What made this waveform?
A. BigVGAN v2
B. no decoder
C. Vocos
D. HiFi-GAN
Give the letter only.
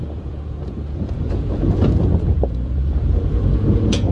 C